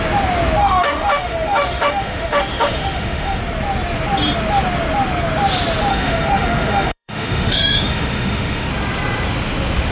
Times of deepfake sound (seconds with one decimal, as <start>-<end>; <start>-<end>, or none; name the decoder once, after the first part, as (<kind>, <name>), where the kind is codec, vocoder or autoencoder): 0.6-3.4 (autoencoder, DAC-VAE); 5.9-8.7